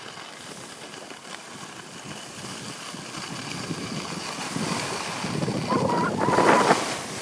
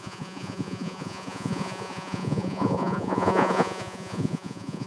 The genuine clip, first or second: first